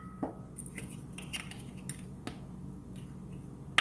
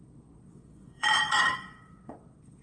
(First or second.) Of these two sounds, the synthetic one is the second